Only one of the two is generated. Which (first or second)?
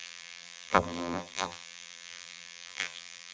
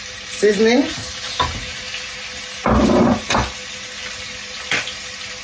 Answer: first